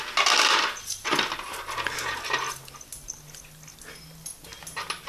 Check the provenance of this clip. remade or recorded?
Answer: recorded